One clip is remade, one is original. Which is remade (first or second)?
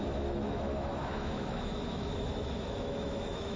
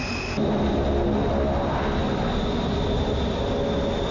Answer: first